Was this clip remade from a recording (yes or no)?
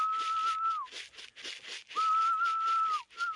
no